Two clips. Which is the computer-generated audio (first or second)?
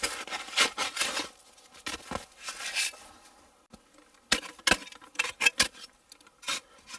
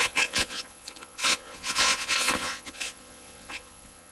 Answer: second